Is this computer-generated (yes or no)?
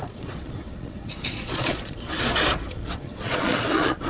yes